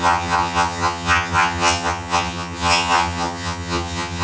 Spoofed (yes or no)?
yes